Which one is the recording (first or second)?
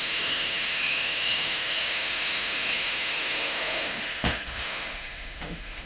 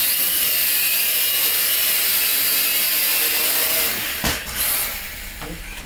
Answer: second